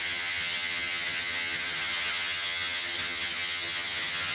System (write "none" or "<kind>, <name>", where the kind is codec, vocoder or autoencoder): vocoder, HiFi-GAN